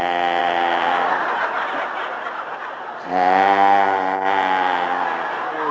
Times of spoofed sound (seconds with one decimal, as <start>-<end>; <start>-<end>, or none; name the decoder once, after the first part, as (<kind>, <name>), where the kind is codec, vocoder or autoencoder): none

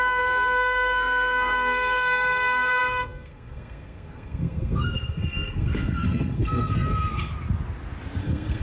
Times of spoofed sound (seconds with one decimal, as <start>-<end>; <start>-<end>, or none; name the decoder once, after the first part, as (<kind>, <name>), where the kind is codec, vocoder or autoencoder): 0.0-7.3 (codec, SNAC); 8.2-8.6

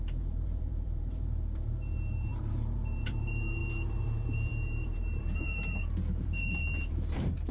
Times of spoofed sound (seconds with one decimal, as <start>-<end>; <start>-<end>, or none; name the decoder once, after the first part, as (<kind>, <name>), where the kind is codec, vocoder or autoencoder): 0.0-7.5 (vocoder, BigVGAN v2)

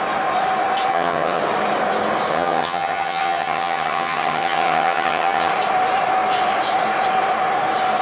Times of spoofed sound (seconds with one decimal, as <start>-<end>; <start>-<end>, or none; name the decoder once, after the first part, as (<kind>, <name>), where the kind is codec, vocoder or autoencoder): 0.9-1.4 (vocoder, HiFi-GAN); 2.3-5.5